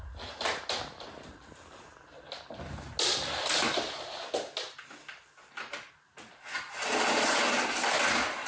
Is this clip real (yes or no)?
yes